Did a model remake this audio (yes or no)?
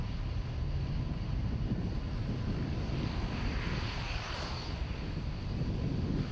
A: no